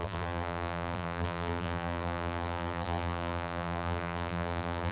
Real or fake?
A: fake